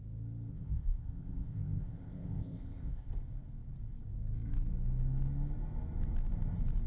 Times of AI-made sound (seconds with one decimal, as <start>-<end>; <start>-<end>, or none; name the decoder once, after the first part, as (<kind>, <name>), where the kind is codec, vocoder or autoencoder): 0.5-3.1 (codec, ZipCodec)